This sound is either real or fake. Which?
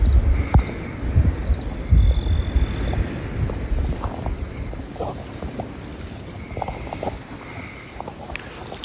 real